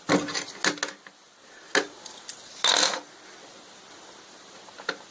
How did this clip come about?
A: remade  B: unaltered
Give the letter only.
B